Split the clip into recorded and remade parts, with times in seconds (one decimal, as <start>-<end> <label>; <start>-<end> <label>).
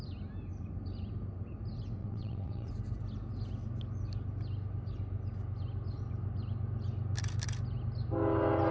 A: 0.0-2.0 recorded; 2.0-2.7 remade; 2.7-8.7 recorded